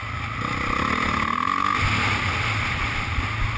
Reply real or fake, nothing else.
real